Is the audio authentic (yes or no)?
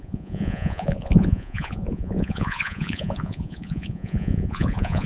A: no